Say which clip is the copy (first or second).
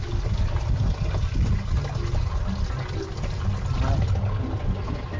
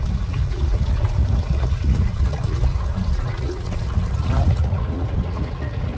second